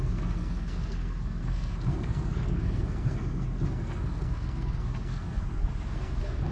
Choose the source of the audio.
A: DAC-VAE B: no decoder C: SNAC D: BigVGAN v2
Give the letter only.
C